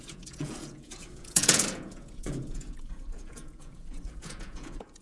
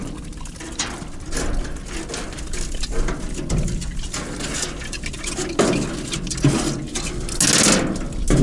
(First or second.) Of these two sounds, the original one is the second